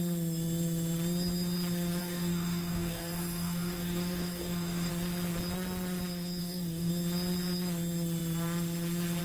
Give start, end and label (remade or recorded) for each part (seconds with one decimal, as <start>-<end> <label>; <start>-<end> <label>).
0.0-2.0 recorded; 2.0-4.9 remade; 4.9-6.4 recorded; 6.4-6.9 remade; 6.9-9.2 recorded